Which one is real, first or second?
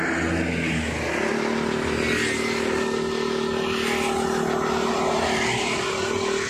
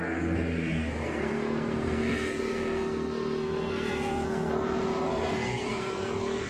first